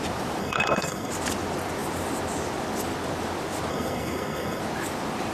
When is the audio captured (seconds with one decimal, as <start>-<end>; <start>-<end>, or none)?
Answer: 0.0-0.4; 1.1-3.7; 4.6-5.3